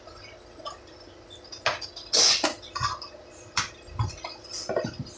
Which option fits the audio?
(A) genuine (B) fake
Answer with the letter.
A